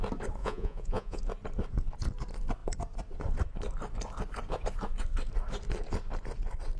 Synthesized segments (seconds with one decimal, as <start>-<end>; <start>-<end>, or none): 0.4-1.2